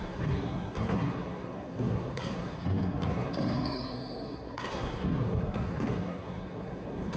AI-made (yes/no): yes